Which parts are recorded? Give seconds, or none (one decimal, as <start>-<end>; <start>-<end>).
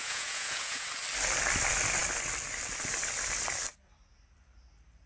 0.9-5.1